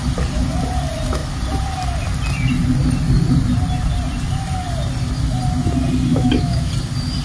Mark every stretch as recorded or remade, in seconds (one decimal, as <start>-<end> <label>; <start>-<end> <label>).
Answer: 0.0-6.1 recorded; 6.1-6.7 remade; 6.7-7.2 recorded

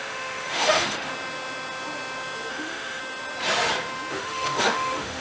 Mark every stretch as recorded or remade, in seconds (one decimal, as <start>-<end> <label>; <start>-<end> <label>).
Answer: 0.0-1.1 remade; 1.1-2.5 recorded; 2.5-3.0 remade; 3.0-4.1 recorded; 4.1-5.2 remade